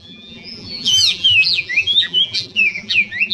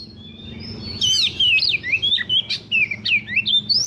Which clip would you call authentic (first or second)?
second